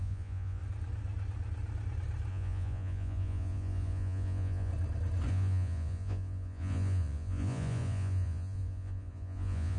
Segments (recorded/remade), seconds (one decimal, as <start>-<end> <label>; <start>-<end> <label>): 0.0-0.6 remade; 0.6-2.3 recorded; 2.3-4.7 remade; 4.7-5.3 recorded; 5.3-9.8 remade